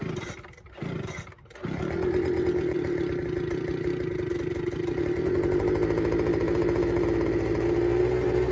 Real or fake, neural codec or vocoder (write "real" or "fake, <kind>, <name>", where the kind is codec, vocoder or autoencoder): real